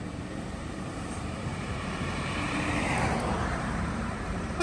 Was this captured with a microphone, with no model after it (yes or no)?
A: no